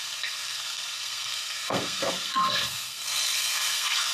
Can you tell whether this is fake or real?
fake